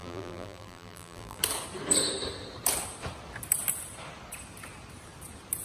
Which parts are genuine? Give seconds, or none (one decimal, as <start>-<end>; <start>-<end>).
1.4-5.6